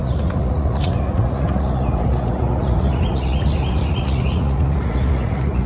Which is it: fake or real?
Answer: fake